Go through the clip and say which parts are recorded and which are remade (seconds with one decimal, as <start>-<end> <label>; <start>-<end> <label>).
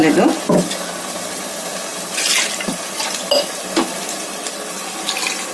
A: 0.0-5.5 recorded